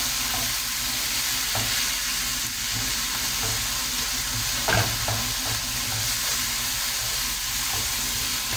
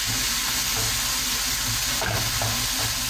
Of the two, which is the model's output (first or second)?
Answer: first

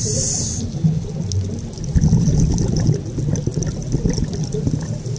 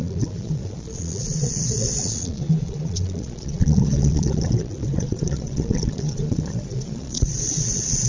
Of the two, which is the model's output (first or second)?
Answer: second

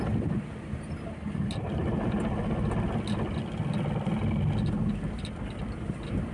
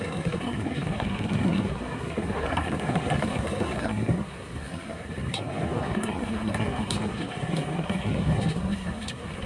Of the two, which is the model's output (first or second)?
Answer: second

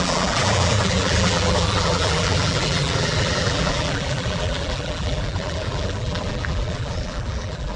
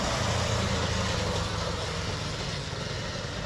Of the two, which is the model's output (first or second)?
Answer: first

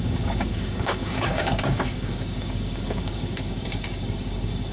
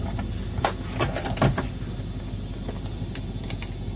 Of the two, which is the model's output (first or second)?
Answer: first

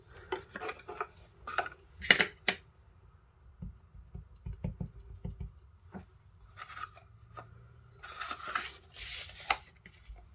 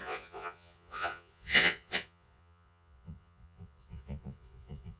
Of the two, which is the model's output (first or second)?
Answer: second